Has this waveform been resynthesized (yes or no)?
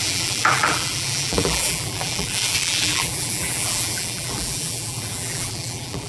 yes